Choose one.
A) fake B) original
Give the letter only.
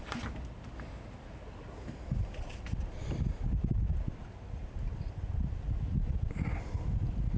B